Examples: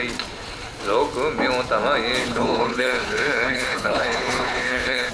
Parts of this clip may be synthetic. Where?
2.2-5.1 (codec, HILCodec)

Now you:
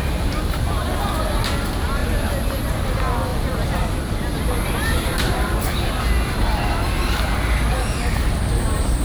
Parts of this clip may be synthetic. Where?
3.3-5.9 (vocoder, BigVGAN v2)

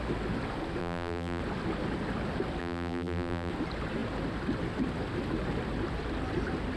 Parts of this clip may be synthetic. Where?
0.8-1.4 (vocoder, BigVGAN v2); 2.6-3.5

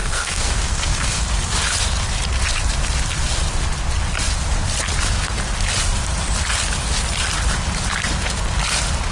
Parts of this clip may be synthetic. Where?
0.0-1.2 (codec, SNAC)

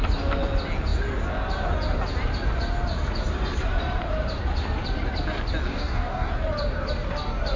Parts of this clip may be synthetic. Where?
5.7-6.3 (codec, DAC)

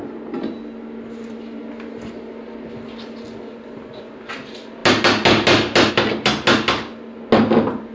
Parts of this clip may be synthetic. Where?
none

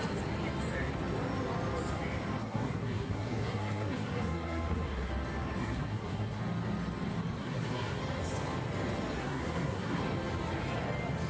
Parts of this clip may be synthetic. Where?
2.4-5.1 (codec, SNAC); 5.6-6.4; 7.4-8.0; 9.2-10.0